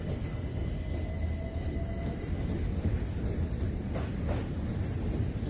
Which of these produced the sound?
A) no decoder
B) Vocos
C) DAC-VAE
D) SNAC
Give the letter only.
A